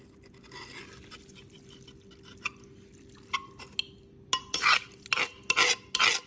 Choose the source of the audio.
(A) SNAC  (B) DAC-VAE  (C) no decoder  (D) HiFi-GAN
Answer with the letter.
C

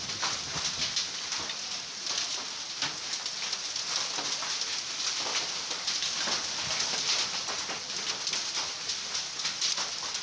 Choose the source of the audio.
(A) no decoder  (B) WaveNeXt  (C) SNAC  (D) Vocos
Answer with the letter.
A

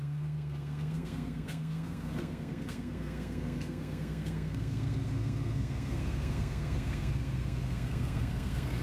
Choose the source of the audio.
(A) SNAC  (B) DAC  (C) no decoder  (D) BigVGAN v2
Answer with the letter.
A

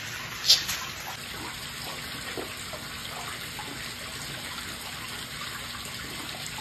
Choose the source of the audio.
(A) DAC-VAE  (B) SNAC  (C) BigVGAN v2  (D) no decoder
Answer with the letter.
D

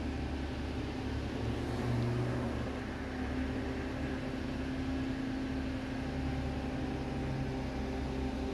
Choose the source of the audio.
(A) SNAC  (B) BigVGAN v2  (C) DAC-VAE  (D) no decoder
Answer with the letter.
D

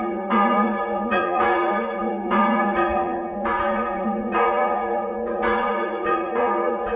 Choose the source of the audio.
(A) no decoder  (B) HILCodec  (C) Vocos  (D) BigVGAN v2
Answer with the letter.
C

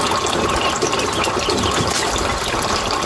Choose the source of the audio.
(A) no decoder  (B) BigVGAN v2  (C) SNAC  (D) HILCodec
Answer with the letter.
A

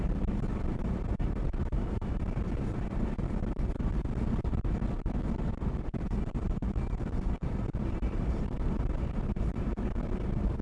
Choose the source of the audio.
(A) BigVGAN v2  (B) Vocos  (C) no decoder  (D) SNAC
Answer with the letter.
A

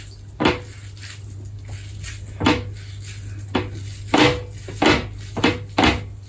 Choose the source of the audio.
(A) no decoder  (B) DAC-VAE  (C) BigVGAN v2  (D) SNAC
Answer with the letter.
A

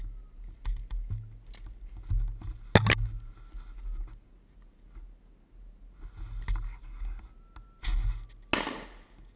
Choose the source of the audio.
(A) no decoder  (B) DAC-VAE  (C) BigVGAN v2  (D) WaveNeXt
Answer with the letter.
A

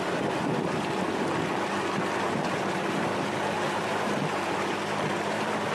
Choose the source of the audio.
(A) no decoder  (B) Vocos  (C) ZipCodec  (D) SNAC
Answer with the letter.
A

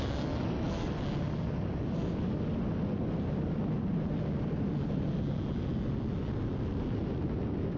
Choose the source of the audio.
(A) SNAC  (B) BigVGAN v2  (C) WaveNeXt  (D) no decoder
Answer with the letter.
D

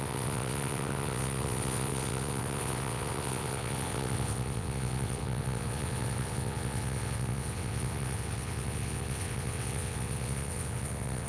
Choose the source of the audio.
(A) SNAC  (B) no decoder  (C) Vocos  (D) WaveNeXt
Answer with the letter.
D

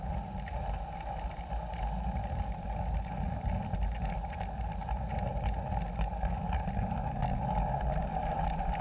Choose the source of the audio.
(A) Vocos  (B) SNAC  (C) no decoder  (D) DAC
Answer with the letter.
C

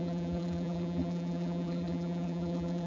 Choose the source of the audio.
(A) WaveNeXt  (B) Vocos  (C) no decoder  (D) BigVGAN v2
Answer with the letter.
D